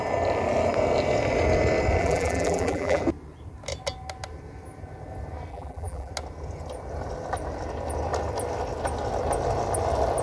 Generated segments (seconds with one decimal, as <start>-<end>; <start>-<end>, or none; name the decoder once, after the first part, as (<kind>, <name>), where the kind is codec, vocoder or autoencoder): 2.0-3.0 (vocoder, BigVGAN v2); 5.5-6.1